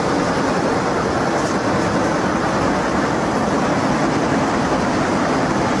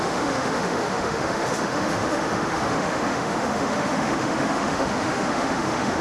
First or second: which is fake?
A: second